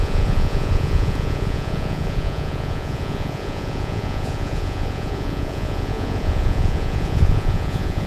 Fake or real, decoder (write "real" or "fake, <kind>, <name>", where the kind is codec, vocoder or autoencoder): fake, vocoder, Vocos